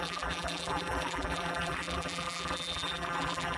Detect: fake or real fake